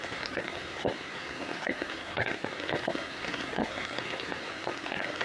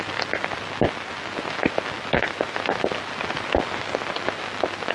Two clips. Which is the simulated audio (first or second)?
first